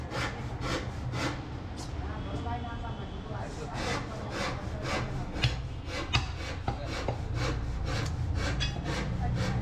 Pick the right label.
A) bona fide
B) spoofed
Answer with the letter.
A